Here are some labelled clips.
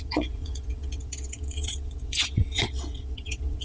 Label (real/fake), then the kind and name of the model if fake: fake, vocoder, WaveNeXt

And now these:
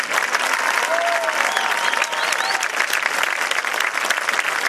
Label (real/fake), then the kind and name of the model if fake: real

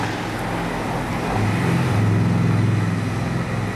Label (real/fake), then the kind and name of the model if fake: real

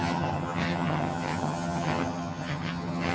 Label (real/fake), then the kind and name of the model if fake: fake, vocoder, HiFi-GAN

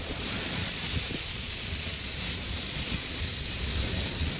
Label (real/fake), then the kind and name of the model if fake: fake, vocoder, Vocos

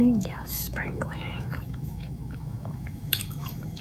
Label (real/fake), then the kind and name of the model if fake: fake, autoencoder, DAC-VAE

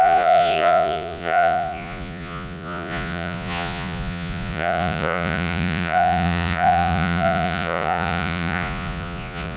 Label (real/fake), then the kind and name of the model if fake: fake, vocoder, Vocos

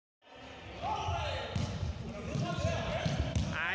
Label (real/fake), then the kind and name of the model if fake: real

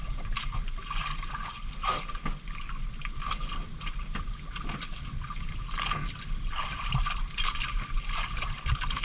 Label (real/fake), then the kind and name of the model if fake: real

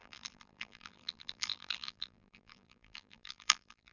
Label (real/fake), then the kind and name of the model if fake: fake, vocoder, BigVGAN v2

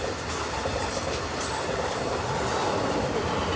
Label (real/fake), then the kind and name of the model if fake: real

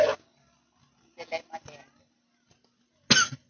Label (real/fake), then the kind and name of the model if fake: real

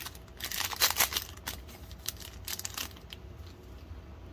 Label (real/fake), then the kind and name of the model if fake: real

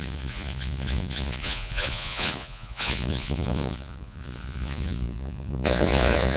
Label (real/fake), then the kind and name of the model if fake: fake, vocoder, Vocos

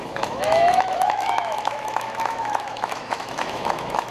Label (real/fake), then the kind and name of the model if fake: fake, autoencoder, DAC-VAE